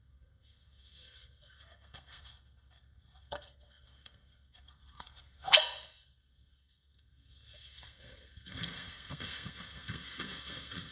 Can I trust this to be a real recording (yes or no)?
no